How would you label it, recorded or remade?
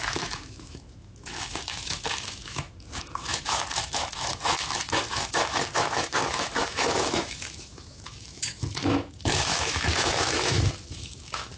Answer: remade